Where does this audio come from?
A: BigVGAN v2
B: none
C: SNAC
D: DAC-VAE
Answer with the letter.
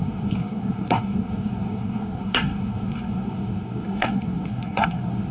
C